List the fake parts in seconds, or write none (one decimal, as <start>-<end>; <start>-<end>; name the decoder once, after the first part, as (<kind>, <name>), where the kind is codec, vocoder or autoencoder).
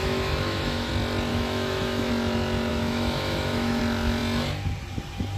0.0-0.9 (autoencoder, DAC-VAE); 1.3-2.1; 2.7-3.8